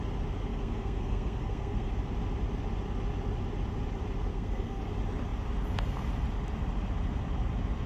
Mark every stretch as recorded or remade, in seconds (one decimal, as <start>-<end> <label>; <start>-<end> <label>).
0.0-0.5 recorded; 0.5-1.9 remade; 1.9-4.3 recorded; 4.3-4.8 remade; 4.8-7.9 recorded